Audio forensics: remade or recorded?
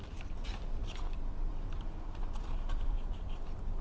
remade